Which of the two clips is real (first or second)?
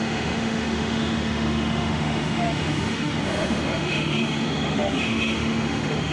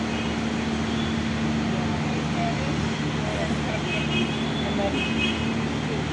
second